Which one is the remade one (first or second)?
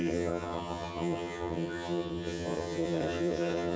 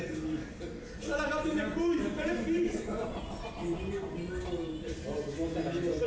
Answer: first